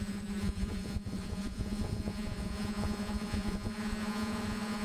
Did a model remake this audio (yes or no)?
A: yes